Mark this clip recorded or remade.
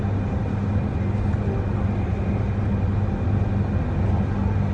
recorded